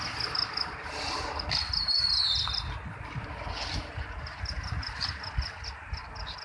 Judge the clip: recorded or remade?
recorded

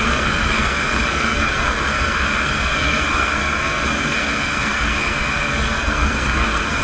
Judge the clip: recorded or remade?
remade